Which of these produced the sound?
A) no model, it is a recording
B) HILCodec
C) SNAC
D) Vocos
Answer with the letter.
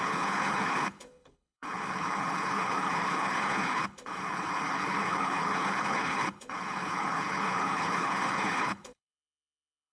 B